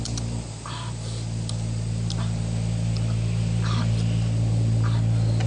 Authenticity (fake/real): real